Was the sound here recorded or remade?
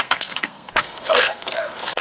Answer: remade